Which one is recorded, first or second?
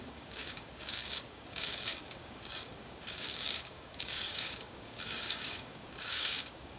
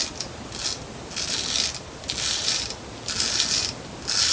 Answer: second